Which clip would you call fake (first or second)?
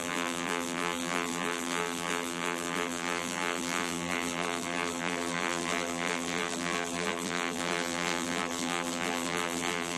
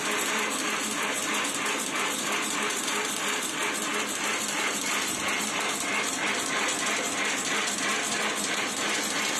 first